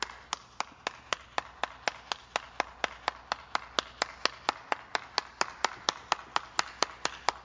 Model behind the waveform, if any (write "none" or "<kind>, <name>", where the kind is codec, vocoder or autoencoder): none